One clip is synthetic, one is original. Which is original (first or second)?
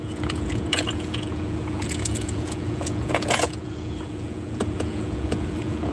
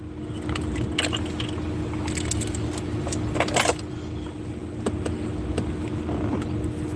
second